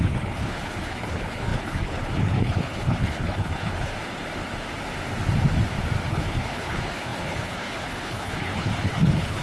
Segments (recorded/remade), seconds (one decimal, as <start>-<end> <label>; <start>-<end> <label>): 0.0-3.9 remade; 3.9-6.1 recorded; 6.1-9.4 remade